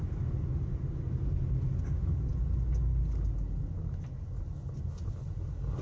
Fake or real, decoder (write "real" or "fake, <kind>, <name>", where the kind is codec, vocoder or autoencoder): real